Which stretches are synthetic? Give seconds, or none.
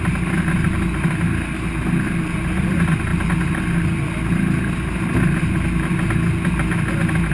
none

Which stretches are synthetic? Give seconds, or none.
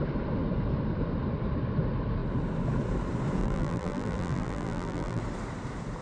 3.4-5.2 (vocoder, BigVGAN v2)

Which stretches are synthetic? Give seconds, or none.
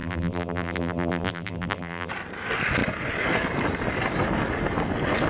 0.0-2.1 (vocoder, BigVGAN v2)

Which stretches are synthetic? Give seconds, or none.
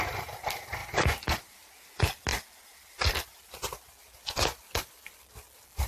0.8-1.7 (vocoder, BigVGAN v2); 2.3-5.9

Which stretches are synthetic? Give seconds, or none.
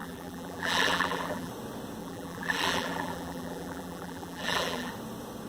0.0-1.5 (vocoder, BigVGAN v2); 2.0-4.9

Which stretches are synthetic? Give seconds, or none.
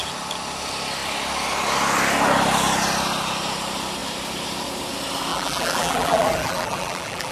5.3-7.3 (vocoder, BigVGAN v2)